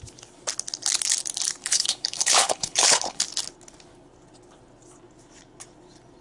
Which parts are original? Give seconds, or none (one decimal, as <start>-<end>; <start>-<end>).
0.0-1.6; 3.2-6.2